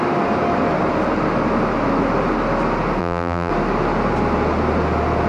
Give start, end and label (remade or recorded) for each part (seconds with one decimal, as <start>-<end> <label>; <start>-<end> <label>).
0.0-3.0 recorded; 3.0-3.5 remade; 3.5-5.3 recorded